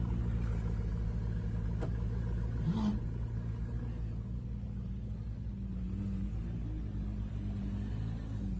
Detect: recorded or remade recorded